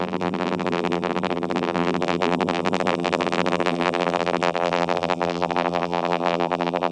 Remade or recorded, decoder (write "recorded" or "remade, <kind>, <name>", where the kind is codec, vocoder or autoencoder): remade, vocoder, BigVGAN v2